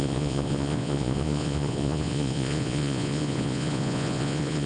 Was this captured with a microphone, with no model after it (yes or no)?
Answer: no